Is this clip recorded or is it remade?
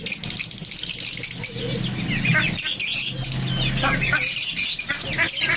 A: recorded